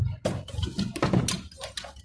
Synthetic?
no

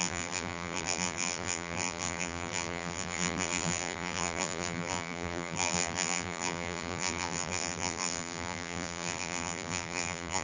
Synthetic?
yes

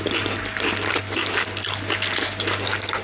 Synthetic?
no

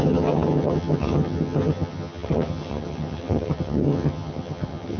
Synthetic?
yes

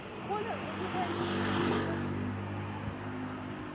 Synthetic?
no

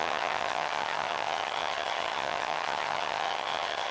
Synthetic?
yes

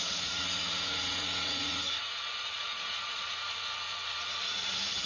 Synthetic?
yes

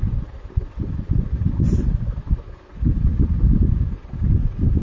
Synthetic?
no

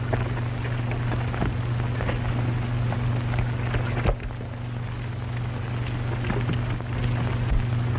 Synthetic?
no